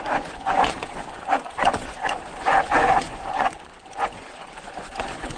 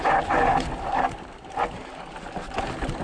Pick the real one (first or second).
second